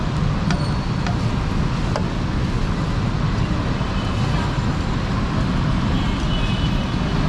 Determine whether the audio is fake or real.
real